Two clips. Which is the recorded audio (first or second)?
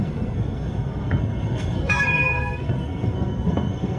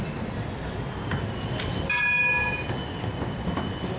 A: second